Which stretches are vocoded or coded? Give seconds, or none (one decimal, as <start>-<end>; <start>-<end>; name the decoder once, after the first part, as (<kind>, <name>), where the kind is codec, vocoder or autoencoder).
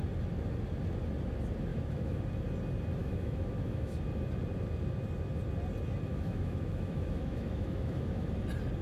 1.7-2.2 (autoencoder, DAC-VAE); 3.0-3.9; 6.1-8.3